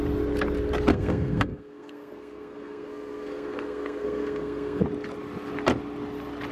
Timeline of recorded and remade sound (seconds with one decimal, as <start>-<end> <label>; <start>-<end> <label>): 0.0-0.9 recorded; 0.9-4.8 remade; 4.8-6.5 recorded

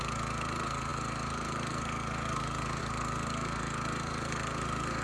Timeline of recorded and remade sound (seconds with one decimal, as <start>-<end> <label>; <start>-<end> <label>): 0.0-5.0 remade

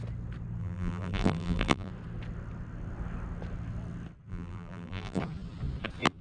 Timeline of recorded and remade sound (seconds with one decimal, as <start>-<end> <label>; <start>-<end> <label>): 0.0-0.6 recorded; 0.6-1.9 remade; 1.9-4.3 recorded; 4.3-5.2 remade; 5.2-6.2 recorded

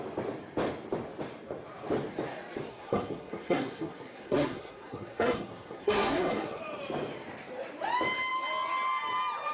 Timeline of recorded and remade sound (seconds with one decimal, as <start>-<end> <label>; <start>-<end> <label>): 0.0-2.7 recorded; 2.7-6.6 remade; 6.6-9.5 recorded

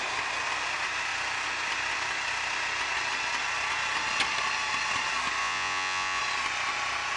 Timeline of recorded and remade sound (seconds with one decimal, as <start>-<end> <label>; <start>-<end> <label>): 0.0-5.4 recorded; 5.4-6.2 remade; 6.2-7.2 recorded

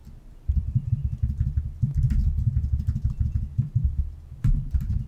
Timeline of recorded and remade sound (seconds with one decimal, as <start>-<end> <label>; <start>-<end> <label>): 0.0-0.5 recorded; 0.5-5.1 remade

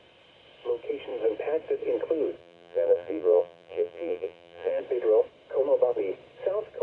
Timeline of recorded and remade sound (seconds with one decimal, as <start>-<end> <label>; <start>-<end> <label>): 0.0-2.4 recorded; 2.4-4.8 remade; 4.8-6.8 recorded